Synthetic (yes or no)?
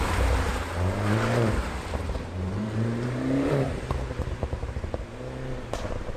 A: yes